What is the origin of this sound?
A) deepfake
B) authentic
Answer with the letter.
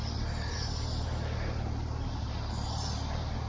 B